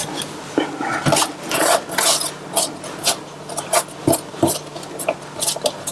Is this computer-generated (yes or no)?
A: no